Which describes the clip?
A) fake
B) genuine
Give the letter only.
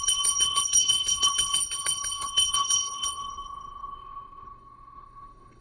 A